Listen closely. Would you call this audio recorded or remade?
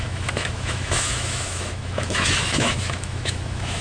remade